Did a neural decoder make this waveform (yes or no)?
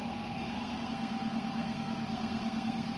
yes